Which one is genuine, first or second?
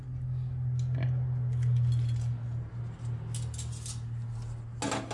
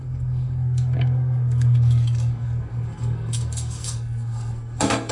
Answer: first